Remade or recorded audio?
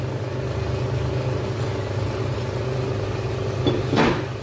recorded